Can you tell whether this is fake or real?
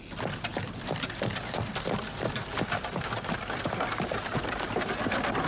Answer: real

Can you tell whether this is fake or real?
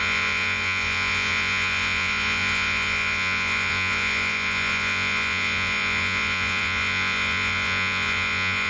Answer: fake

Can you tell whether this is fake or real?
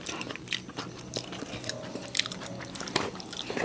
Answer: real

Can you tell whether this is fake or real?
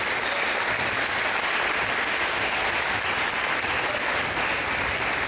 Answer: real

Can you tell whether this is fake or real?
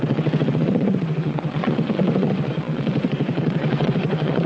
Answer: fake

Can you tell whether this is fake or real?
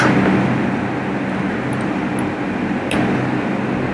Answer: real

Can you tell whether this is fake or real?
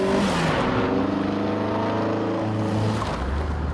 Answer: real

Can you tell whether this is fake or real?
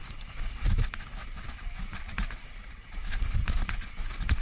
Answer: real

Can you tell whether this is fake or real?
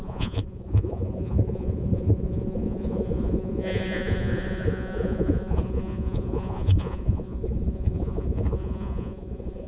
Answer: fake